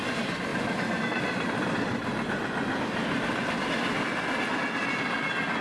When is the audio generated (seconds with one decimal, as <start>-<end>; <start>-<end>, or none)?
0.5-1.0